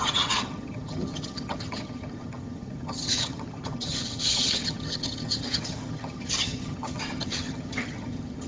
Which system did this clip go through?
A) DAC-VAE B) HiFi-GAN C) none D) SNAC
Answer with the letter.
B